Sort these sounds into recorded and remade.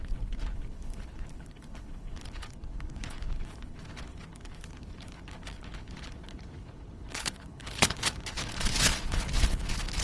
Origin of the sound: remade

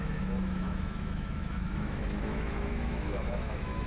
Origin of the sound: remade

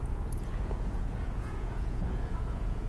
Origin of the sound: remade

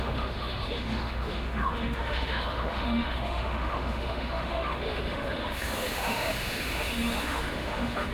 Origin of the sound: remade